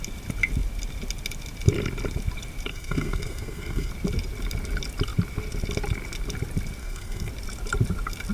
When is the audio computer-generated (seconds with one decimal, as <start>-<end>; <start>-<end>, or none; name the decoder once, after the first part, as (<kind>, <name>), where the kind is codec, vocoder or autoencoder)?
2.7-3.9 (codec, SNAC); 6.8-7.3